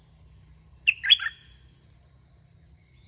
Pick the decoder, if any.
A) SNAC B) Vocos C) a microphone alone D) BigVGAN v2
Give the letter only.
C